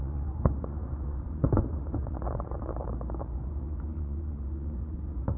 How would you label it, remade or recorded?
remade